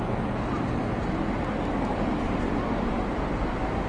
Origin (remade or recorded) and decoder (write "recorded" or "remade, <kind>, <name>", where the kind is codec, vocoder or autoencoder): recorded